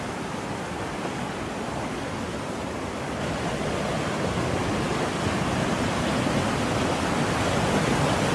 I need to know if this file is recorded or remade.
recorded